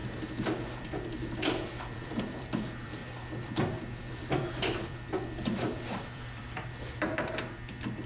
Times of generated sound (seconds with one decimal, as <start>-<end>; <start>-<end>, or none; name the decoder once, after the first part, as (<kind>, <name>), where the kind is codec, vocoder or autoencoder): 0.8-3.0 (vocoder, BigVGAN v2); 4.1-8.1